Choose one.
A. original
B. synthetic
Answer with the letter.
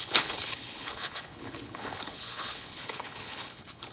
B